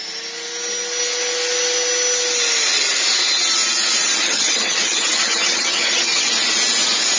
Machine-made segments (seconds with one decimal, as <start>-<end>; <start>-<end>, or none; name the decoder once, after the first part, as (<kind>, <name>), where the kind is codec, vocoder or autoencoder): 4.2-6.3 (vocoder, HiFi-GAN)